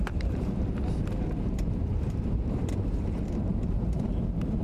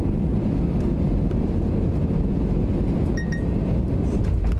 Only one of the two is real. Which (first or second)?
second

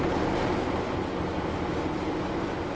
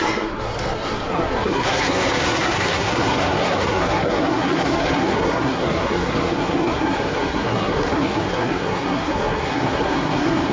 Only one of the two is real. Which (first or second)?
first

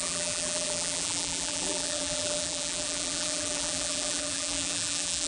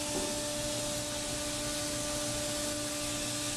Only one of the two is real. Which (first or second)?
second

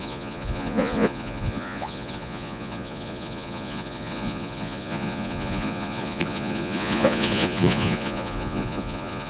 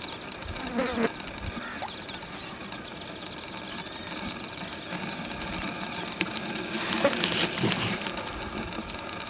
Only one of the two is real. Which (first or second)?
second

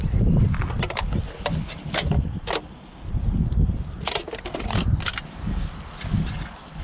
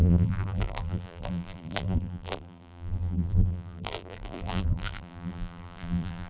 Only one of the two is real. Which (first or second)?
first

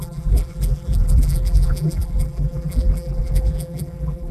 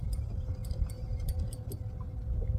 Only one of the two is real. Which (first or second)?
second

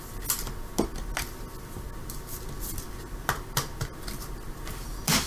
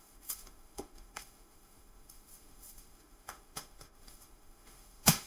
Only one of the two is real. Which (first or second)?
first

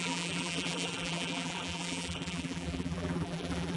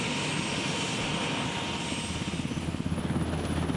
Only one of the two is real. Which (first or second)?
second